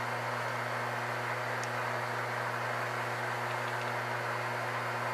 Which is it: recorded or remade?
recorded